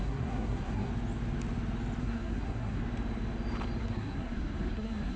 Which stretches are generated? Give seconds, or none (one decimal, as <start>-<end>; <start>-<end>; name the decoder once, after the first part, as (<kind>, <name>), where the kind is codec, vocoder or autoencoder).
0.0-0.9 (codec, SNAC); 2.0-2.8; 3.8-5.2